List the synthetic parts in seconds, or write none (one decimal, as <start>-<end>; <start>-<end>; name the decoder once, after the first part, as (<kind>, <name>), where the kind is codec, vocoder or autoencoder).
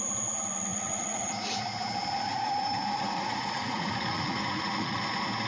0.7-1.3 (vocoder, Vocos); 2.3-5.0